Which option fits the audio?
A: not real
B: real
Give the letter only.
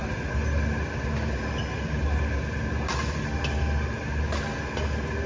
B